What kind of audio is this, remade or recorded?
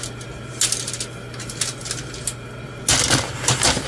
recorded